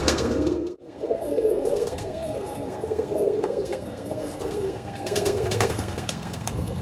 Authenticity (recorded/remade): remade